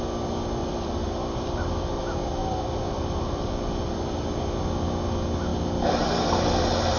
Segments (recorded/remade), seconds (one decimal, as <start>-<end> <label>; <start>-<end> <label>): 0.0-0.6 recorded; 0.6-2.0 remade; 2.0-2.4 recorded; 2.4-3.9 remade; 3.9-7.0 recorded